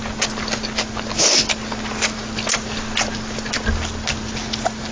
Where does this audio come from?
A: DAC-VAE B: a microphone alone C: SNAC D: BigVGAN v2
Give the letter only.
B